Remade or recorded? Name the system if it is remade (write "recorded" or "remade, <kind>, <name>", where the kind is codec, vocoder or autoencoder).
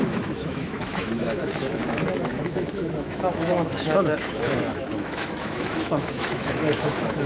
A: remade, autoencoder, DAC-VAE